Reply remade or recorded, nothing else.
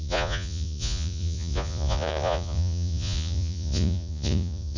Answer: remade